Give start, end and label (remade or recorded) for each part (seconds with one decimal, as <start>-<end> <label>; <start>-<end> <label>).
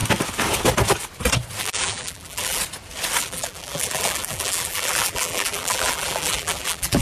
0.0-1.6 recorded; 1.6-2.6 remade; 2.6-3.2 recorded; 3.2-7.0 remade